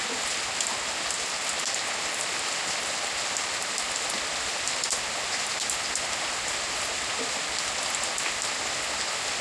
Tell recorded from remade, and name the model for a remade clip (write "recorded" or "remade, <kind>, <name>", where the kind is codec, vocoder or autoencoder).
recorded